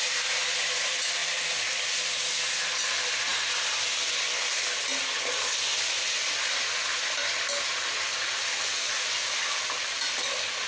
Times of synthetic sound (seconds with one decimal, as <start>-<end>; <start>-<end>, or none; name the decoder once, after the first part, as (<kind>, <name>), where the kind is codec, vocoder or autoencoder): none